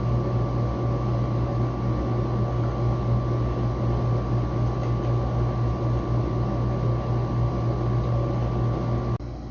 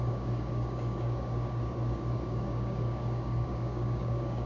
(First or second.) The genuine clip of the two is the first